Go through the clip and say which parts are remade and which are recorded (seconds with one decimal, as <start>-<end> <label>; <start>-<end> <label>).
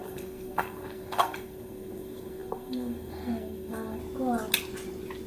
0.0-4.0 remade; 4.0-5.3 recorded